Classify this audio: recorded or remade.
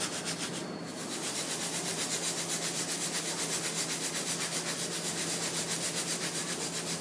recorded